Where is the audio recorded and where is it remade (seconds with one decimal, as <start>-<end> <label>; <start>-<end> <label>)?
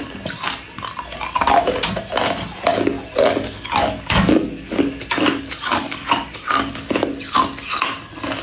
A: 0.0-2.7 recorded; 2.7-7.1 remade; 7.1-8.4 recorded